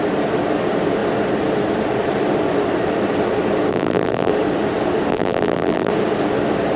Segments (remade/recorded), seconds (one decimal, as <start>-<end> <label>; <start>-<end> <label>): 0.0-3.7 recorded; 3.7-4.3 remade; 4.3-5.1 recorded; 5.1-5.9 remade; 5.9-6.8 recorded